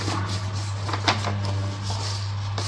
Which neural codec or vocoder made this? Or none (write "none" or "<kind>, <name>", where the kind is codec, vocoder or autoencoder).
none